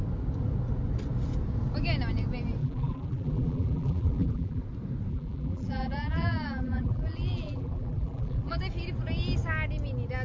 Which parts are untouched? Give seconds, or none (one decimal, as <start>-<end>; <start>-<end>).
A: 0.0-2.6; 4.6-5.1; 8.6-10.2